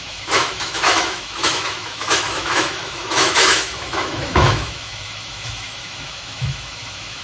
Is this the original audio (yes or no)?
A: no